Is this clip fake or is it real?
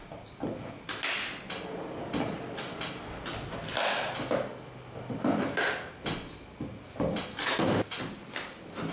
real